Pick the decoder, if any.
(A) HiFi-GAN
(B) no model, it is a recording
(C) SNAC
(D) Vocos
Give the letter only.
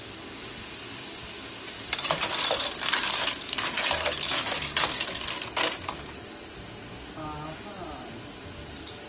B